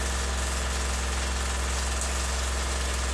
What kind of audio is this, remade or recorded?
recorded